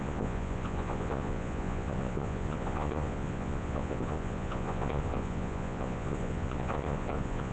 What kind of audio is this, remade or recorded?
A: remade